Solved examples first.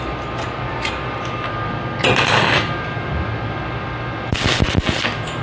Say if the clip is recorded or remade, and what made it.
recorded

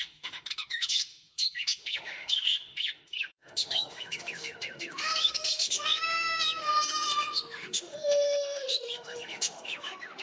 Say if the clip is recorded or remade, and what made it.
remade, autoencoder, DAC-VAE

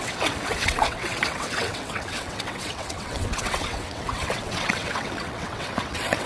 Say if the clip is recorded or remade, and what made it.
remade, vocoder, WaveNeXt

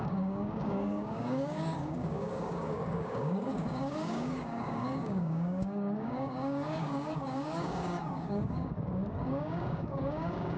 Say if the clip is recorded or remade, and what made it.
remade, codec, DAC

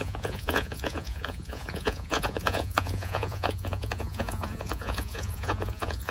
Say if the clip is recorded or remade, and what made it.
remade, vocoder, Vocos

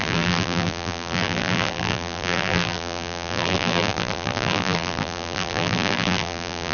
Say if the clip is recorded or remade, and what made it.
remade, vocoder, BigVGAN v2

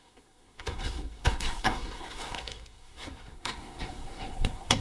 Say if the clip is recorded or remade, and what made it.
remade, codec, SNAC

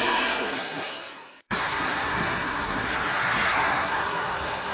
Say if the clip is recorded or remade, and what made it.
remade, codec, SNAC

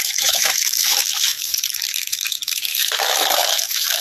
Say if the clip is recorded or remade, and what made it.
remade, autoencoder, DAC-VAE